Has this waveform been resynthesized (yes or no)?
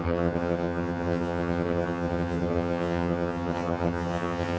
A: yes